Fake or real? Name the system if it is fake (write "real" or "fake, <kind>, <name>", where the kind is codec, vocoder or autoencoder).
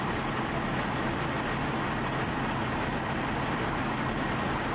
real